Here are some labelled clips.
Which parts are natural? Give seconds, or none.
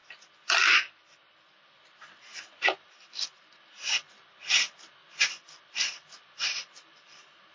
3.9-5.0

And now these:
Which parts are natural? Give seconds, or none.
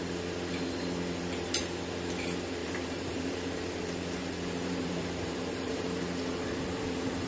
0.0-2.6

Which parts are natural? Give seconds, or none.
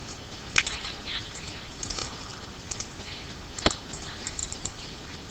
0.0-2.0; 2.9-4.4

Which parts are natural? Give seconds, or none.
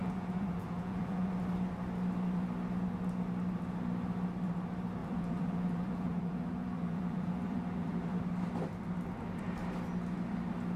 1.3-5.0; 8.2-10.8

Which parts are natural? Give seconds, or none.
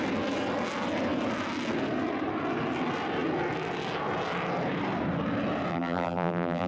0.0-5.7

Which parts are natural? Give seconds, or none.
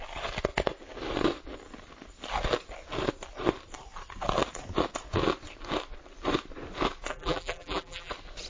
0.0-7.1; 8.1-8.5